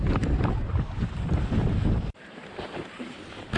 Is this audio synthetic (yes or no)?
yes